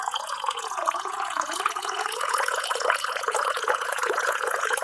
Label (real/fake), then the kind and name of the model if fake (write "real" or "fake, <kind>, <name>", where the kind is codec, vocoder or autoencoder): fake, vocoder, Vocos